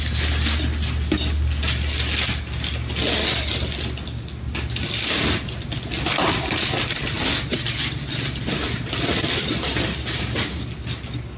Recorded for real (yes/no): yes